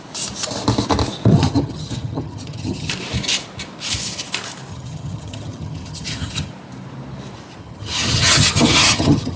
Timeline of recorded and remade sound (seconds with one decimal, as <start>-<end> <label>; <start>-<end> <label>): 0.0-1.3 recorded; 1.3-2.9 remade; 2.9-4.7 recorded; 4.7-6.5 remade; 6.5-7.6 recorded; 7.6-9.4 remade